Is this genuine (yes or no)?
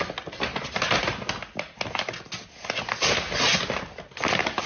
yes